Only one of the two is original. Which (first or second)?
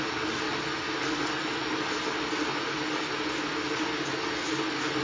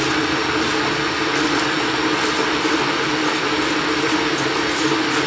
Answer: first